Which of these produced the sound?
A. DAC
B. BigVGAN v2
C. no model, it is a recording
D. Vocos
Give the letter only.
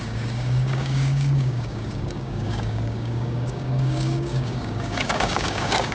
A